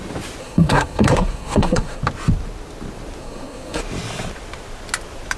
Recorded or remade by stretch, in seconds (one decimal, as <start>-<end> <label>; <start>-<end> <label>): 0.0-0.4 recorded; 0.4-2.0 remade; 2.0-3.2 recorded; 3.2-3.8 remade; 3.8-5.4 recorded